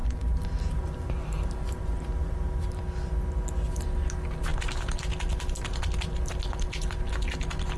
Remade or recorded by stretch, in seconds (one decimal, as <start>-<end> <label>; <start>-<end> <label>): 0.0-2.8 remade; 2.8-7.8 recorded